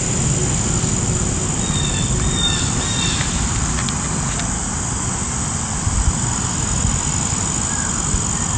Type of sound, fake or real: real